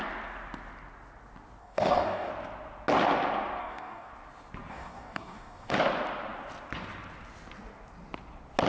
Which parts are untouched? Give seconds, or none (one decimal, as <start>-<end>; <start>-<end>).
0.0-1.6; 2.3-3.6; 4.1-4.7; 5.7-8.7